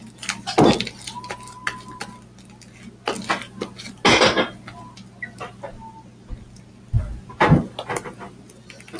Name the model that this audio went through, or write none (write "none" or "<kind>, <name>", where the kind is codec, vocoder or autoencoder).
none